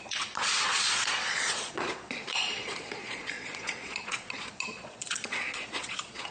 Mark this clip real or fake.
fake